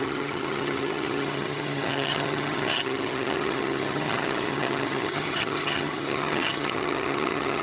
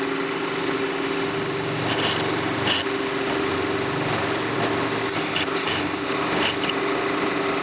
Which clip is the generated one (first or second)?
first